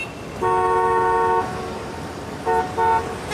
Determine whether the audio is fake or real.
real